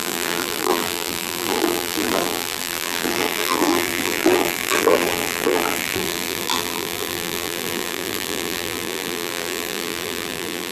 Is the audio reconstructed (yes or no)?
yes